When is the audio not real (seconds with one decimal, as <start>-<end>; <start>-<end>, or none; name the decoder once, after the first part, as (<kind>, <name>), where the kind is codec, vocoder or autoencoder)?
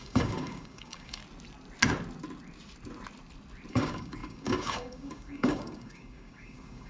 0.0-1.2 (codec, DAC); 3.7-6.9